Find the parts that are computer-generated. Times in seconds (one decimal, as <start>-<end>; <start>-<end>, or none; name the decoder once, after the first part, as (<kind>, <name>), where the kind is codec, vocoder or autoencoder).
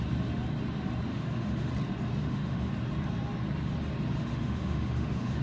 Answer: 1.1-1.7 (autoencoder, DAC-VAE); 2.2-2.7; 4.2-5.4